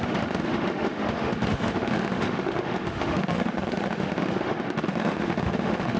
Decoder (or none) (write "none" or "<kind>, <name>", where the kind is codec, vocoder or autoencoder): autoencoder, DAC-VAE